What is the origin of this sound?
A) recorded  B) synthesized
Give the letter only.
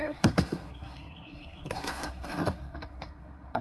B